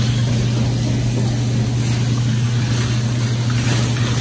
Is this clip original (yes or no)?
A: yes